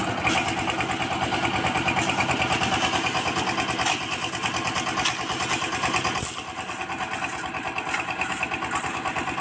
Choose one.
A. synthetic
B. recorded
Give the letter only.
B